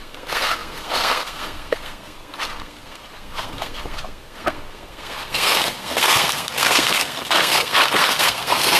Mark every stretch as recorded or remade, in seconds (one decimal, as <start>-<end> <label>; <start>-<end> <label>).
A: 0.0-8.8 remade